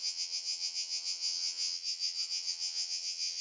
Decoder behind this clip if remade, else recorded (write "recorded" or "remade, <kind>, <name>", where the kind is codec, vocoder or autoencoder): remade, vocoder, HiFi-GAN